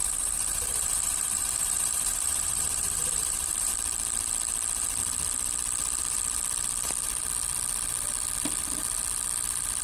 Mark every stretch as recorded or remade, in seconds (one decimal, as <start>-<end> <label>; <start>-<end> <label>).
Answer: 0.0-3.7 remade; 3.7-9.8 recorded